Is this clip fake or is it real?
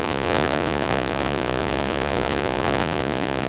fake